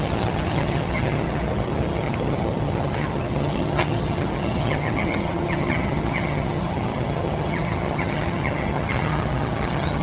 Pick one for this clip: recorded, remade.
remade